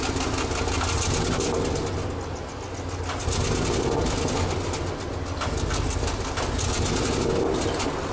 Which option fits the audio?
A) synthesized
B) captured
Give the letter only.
B